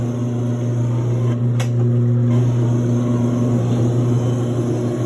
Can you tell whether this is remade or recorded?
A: recorded